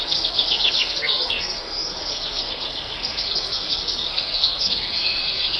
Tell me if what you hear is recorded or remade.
remade